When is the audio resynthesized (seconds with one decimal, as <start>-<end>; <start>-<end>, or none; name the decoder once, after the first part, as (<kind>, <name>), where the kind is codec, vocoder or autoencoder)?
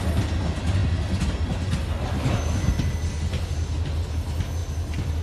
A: 4.6-5.2 (vocoder, BigVGAN v2)